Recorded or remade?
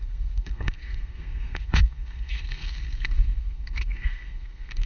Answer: remade